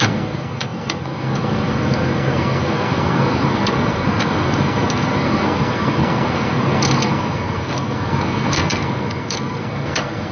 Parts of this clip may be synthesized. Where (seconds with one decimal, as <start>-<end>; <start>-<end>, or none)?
0.0-10.3